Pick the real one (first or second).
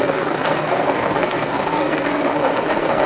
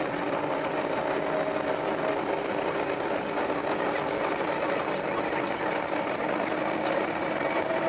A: second